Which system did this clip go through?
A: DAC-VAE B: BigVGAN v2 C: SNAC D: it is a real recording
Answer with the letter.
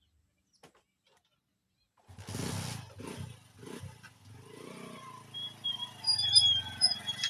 D